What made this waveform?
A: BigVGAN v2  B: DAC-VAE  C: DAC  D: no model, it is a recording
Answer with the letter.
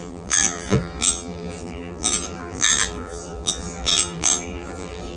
A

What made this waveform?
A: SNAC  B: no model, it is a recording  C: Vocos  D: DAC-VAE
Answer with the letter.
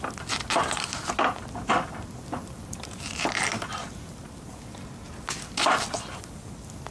B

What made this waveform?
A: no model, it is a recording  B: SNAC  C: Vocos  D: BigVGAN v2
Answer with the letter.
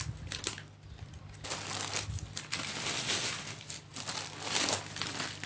A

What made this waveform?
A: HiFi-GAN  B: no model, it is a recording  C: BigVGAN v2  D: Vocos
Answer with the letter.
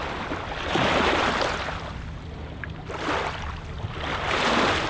B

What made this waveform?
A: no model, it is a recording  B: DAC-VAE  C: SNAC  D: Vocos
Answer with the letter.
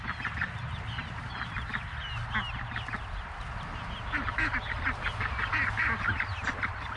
A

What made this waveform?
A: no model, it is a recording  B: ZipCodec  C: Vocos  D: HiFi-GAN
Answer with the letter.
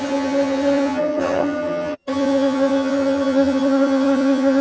D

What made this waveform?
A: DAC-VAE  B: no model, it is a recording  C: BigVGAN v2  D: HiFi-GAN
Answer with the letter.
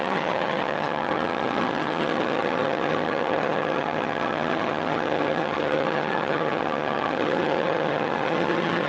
D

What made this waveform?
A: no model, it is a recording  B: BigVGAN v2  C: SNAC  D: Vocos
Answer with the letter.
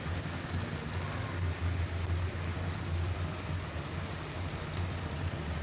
A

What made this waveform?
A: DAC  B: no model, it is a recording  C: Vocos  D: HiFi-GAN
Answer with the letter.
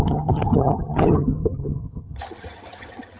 D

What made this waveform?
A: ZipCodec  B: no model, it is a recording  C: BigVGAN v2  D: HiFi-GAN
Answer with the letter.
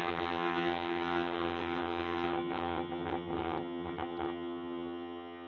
D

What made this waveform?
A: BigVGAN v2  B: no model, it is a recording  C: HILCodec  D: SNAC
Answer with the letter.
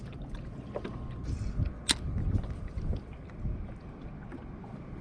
B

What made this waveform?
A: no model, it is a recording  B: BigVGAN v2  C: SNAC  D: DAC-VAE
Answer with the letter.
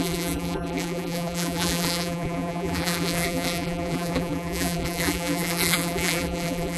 B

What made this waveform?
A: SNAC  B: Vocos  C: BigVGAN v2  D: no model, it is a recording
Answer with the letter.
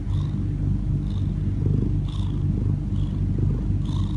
D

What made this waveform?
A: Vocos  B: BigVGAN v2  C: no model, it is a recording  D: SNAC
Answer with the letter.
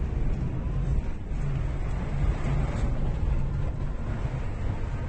C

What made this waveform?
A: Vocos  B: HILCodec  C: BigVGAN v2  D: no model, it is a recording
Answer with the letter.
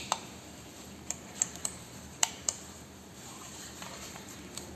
C